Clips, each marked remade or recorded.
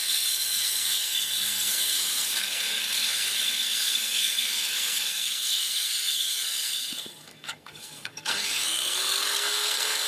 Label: remade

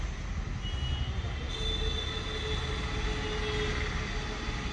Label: recorded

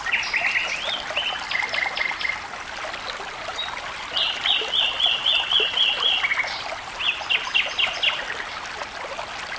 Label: recorded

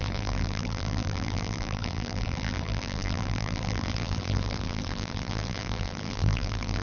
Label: remade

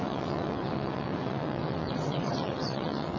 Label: remade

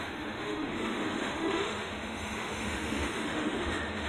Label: remade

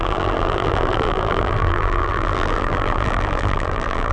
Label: remade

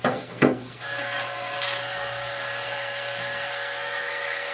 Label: remade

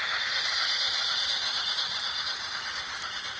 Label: recorded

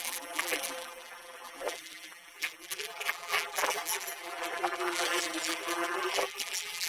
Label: remade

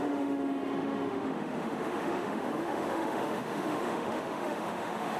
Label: remade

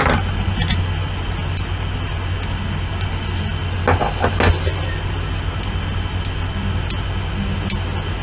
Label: recorded